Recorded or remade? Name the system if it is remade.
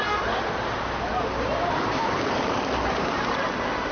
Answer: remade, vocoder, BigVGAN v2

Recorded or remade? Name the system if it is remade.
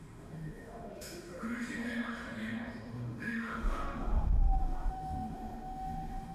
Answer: remade, autoencoder, DAC-VAE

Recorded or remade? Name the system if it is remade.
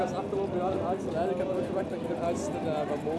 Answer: recorded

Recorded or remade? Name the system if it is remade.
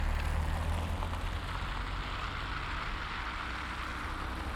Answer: recorded